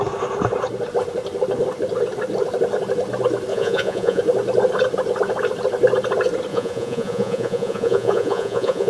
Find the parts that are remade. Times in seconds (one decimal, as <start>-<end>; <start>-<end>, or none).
3.5-4.2; 6.5-8.9